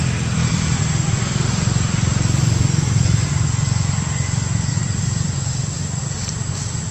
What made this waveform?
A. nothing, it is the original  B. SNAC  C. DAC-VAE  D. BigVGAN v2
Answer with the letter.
D